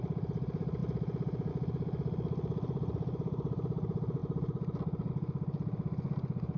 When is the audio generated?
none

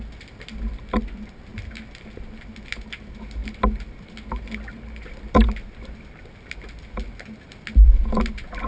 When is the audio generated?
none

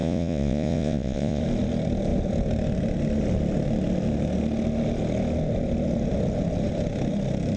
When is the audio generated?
0.0-1.4 (vocoder, Vocos)

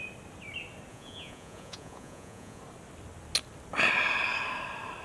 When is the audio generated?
0.9-2.6 (vocoder, Vocos)